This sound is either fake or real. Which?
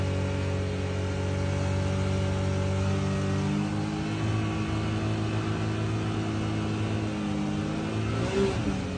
real